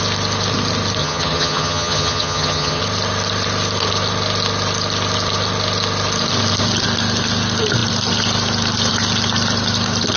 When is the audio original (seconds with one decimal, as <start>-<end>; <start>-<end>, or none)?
0.0-1.0; 2.8-10.2